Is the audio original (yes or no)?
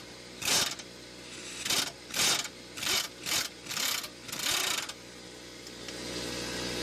yes